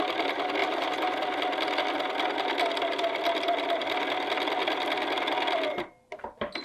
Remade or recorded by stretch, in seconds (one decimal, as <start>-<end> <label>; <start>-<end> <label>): 0.0-6.6 recorded